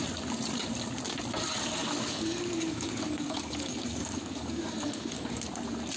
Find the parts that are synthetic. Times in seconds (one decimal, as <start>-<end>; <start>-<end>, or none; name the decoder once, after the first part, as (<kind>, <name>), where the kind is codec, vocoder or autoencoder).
1.8-5.4 (codec, DAC)